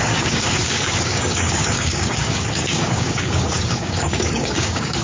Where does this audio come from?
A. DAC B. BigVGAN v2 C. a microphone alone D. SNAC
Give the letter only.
A